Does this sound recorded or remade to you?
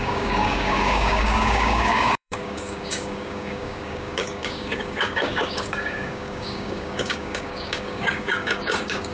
remade